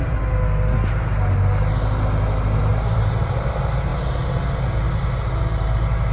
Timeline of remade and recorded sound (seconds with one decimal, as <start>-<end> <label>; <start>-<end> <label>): 0.0-2.7 recorded; 2.7-3.5 remade; 3.5-6.1 recorded